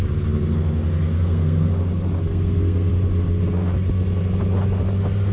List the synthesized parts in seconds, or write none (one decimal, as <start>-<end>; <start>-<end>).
1.1-1.7; 2.3-2.9

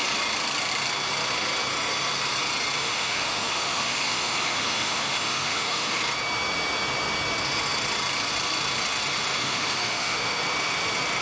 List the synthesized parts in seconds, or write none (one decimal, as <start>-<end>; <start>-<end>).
2.8-6.0; 9.4-10.4